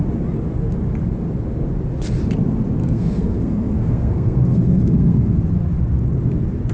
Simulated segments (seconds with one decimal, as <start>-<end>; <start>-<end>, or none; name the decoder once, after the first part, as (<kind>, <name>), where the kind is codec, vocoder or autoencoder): 2.8-5.4 (codec, SNAC)